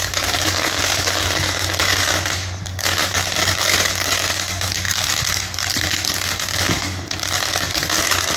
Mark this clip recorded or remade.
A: remade